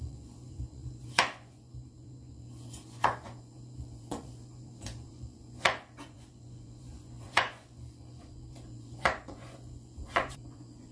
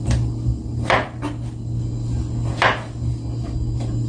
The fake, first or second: first